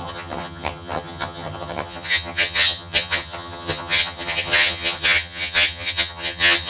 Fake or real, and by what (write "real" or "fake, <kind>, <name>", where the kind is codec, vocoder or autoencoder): fake, vocoder, HiFi-GAN